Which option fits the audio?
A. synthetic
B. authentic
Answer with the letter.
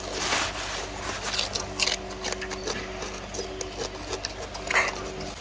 B